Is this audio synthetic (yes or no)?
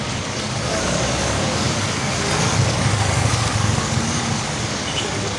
yes